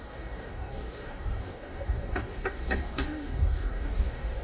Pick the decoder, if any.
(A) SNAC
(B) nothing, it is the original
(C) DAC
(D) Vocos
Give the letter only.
C